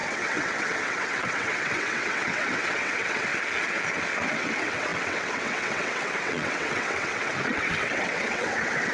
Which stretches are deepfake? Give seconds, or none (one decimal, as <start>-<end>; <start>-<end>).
0.0-3.3; 4.3-8.9